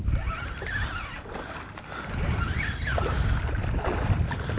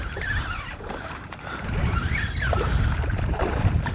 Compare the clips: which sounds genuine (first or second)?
first